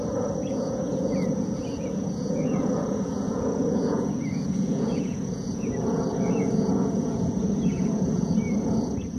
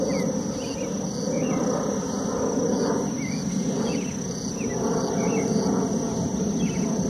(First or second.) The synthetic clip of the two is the first